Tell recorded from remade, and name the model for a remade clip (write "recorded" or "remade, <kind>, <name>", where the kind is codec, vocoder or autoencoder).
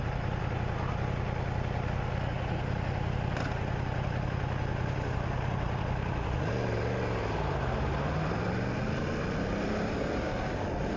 recorded